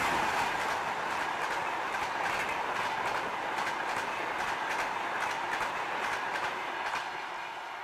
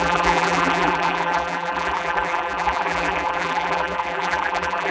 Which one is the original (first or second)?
first